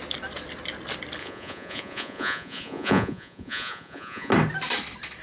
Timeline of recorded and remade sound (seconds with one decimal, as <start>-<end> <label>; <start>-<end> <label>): 0.0-1.2 recorded; 1.2-4.3 remade; 4.3-5.2 recorded